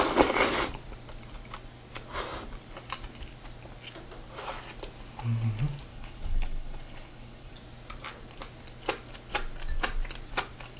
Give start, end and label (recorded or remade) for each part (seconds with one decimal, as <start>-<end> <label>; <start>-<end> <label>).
0.0-5.9 recorded; 5.9-7.5 remade; 7.5-10.8 recorded